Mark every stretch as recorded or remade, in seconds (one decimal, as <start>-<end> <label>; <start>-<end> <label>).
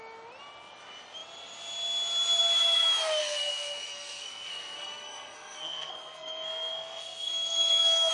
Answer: 0.0-3.2 recorded; 3.2-8.1 remade